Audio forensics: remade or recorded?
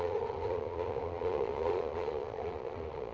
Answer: remade